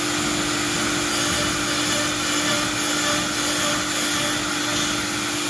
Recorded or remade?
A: recorded